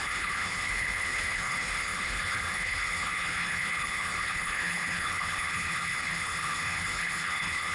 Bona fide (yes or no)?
no